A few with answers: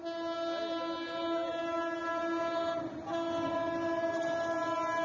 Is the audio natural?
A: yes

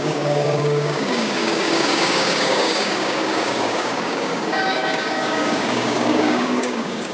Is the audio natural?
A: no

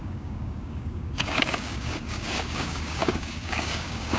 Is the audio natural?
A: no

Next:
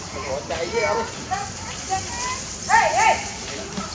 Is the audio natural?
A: yes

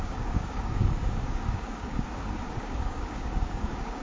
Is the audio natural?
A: no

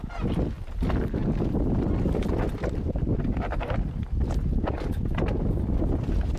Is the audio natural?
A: yes